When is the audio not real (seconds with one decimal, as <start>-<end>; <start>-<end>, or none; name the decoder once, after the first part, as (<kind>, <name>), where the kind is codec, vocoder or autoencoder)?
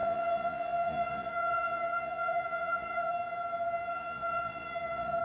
0.0-3.1 (vocoder, Vocos); 3.9-5.2